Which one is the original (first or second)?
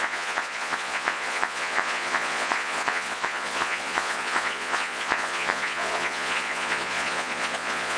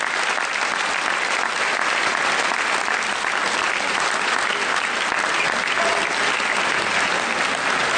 second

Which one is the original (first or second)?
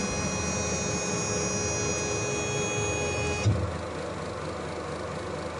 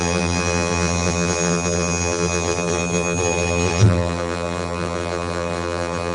first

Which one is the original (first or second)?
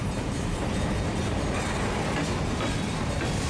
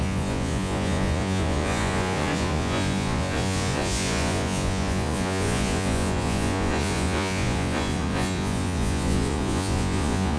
first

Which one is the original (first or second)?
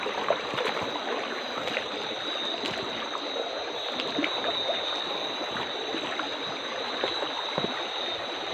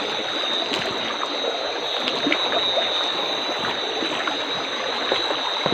second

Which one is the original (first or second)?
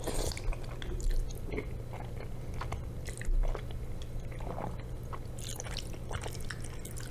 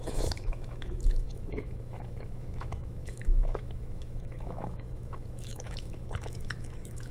first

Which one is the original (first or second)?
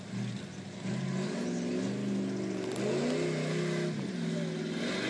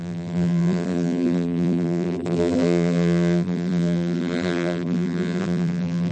first